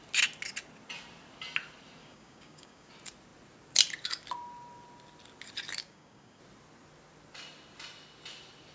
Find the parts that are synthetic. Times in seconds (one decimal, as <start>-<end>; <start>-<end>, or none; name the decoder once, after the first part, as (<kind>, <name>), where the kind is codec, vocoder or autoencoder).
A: 2.0-2.9 (codec, DAC); 5.8-6.4